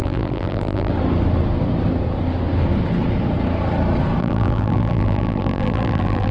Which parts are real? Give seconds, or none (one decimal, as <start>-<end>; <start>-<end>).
0.9-4.2